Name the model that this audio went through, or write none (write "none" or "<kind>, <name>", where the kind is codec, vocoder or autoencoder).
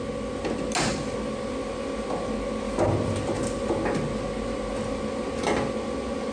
none